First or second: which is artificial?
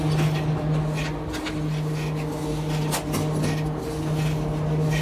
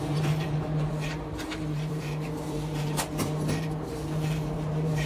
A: second